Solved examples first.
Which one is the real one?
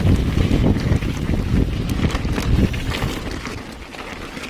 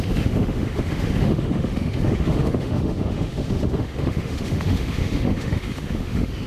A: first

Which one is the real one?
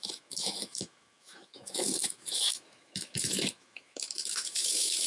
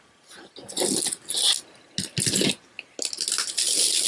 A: second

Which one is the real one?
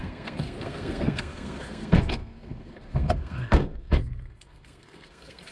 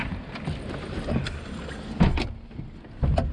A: second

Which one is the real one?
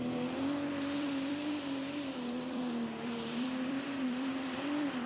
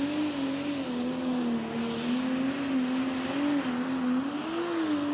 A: second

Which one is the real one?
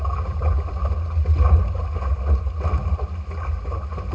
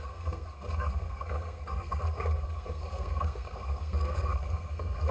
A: first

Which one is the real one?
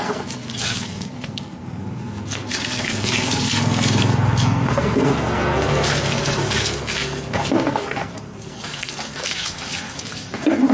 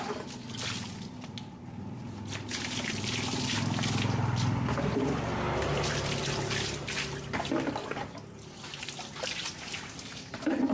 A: second